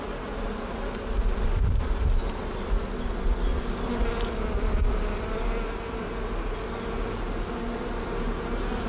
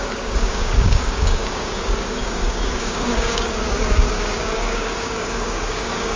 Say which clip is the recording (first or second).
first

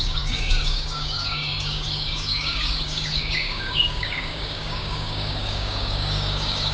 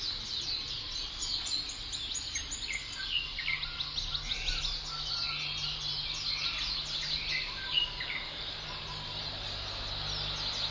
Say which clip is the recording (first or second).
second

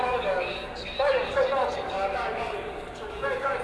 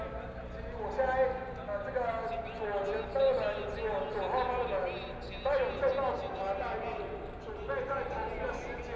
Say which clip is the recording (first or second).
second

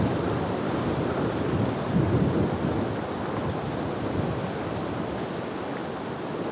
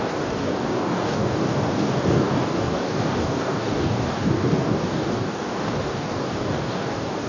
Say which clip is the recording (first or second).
first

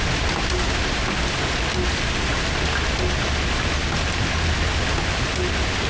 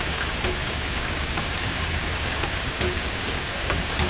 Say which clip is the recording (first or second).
first